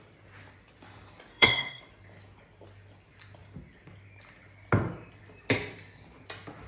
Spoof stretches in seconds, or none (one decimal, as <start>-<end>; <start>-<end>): 1.3-1.8